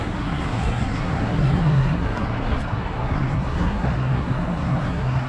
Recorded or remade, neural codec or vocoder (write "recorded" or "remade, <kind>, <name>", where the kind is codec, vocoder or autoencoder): remade, codec, SNAC